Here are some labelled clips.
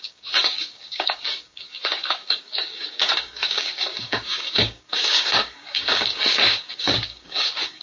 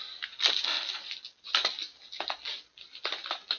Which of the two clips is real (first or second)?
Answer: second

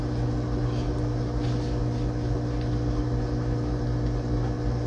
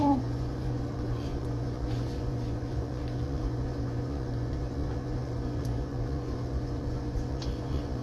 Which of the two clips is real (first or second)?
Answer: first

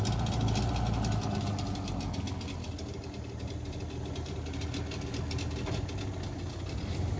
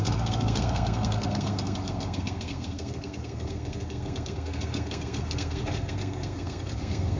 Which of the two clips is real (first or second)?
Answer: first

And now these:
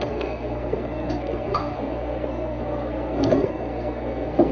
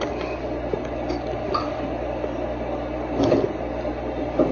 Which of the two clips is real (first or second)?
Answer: second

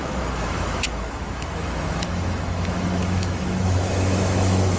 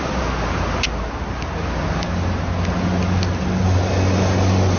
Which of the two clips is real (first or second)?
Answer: second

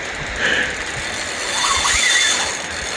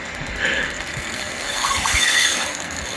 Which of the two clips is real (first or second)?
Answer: first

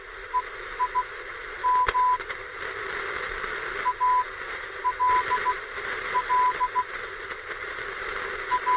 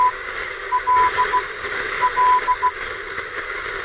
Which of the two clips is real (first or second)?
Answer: first